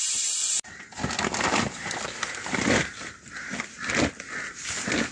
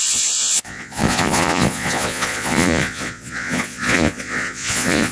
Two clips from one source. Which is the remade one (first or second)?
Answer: second